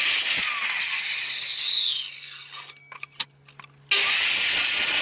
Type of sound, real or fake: real